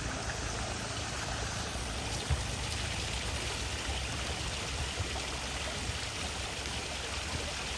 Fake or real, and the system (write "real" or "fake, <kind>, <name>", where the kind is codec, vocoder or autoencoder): real